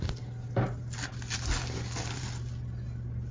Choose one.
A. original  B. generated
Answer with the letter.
A